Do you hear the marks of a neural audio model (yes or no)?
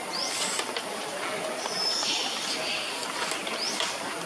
no